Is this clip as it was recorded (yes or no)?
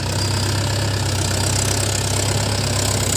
yes